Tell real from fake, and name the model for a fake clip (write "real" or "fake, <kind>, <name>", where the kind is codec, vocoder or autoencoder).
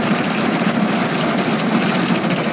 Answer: real